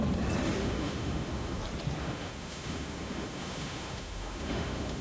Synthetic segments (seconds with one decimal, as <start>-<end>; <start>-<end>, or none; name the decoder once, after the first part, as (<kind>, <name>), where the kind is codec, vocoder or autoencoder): 0.6-1.6 (autoencoder, DAC-VAE); 2.0-5.0